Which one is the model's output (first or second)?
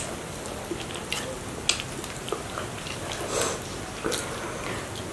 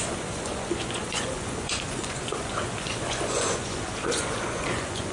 second